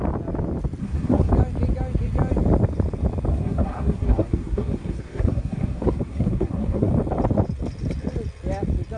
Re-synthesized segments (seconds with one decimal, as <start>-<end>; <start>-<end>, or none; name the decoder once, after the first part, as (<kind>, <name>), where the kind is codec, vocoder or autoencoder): 0.8-1.3 (codec, SNAC); 3.3-6.9